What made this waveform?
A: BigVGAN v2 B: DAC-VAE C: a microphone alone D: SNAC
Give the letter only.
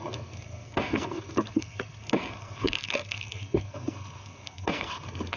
D